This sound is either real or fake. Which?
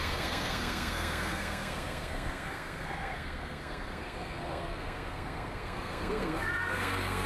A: fake